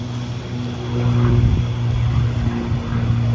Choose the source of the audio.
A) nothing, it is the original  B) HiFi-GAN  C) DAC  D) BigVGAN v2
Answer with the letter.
A